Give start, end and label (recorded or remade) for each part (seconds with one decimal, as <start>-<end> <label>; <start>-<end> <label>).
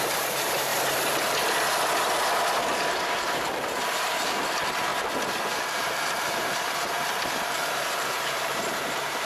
0.0-0.7 remade; 0.7-2.9 recorded; 2.9-4.9 remade; 4.9-5.5 recorded; 5.5-9.3 remade